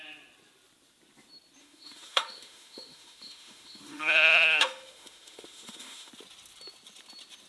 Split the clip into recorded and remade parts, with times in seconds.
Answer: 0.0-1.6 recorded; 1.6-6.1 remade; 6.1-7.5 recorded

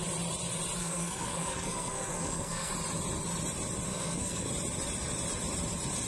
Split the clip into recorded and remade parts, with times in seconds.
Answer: 0.0-0.8 recorded; 0.8-2.7 remade; 2.7-3.9 recorded; 3.9-4.5 remade; 4.5-6.1 recorded

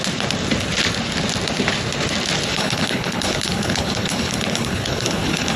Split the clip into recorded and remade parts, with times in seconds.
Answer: 0.0-2.5 recorded; 2.5-5.6 remade

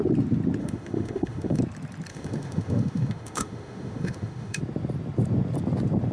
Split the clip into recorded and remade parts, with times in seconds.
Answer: 0.0-0.6 recorded; 0.6-1.6 remade; 1.6-2.1 recorded; 2.1-4.6 remade; 4.6-6.1 recorded

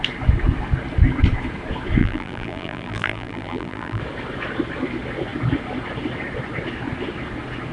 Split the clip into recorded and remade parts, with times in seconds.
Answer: 0.0-2.0 recorded; 2.0-4.0 remade; 4.0-7.7 recorded

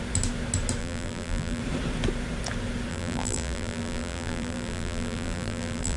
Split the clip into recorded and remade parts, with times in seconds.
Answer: 0.0-0.8 recorded; 0.8-1.6 remade; 1.6-2.9 recorded; 2.9-6.0 remade

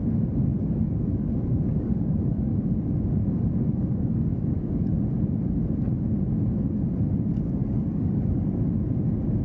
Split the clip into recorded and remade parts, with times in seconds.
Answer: 0.0-0.5 recorded; 0.5-2.6 remade; 2.6-3.2 recorded; 3.2-4.9 remade; 4.9-7.6 recorded; 7.6-8.6 remade; 8.6-9.4 recorded

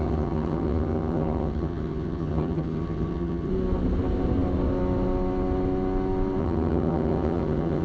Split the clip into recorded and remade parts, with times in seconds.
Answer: 0.0-3.5 remade; 3.5-6.4 recorded; 6.4-7.8 remade